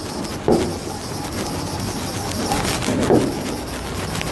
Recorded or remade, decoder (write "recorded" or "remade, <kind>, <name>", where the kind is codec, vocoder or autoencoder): recorded